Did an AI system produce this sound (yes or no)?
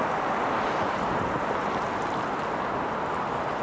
no